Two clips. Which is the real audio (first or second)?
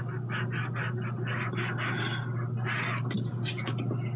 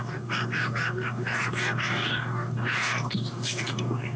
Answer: first